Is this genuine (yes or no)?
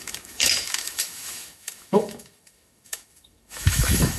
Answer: no